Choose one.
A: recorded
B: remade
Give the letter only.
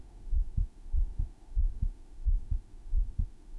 B